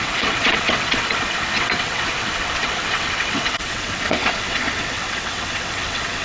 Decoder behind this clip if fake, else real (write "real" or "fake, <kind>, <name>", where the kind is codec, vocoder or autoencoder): fake, vocoder, WaveNeXt